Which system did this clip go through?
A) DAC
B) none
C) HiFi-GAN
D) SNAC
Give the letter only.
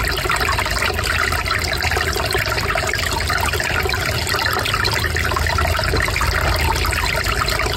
B